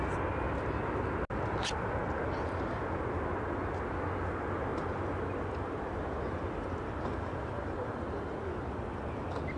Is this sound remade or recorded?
recorded